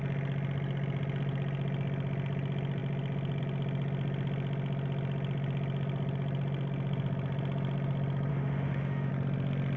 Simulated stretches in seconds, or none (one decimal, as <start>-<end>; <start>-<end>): 8.3-9.1